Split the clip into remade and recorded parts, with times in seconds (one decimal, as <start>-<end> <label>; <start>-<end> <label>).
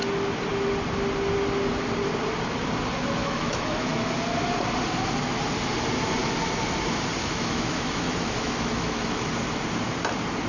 0.0-3.2 recorded; 3.2-4.1 remade; 4.1-7.2 recorded; 7.2-9.3 remade; 9.3-10.5 recorded